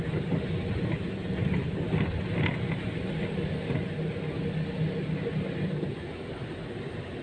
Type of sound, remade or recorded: recorded